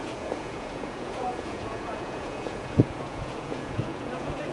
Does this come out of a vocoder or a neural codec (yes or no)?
yes